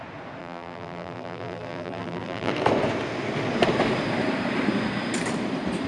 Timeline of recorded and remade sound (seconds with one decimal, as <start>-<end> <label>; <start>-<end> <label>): 0.0-0.4 recorded; 0.4-2.5 remade; 2.5-5.9 recorded